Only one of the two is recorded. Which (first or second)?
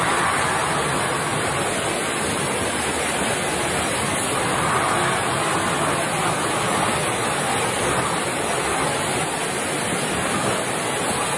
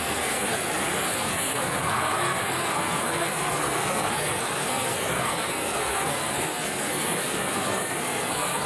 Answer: first